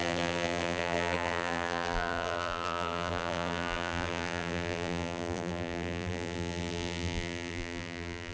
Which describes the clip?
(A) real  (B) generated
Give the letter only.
B